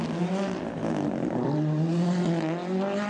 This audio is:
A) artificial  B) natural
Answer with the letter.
B